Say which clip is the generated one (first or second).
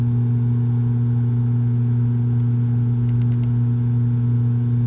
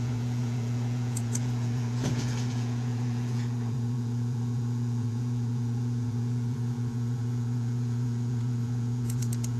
second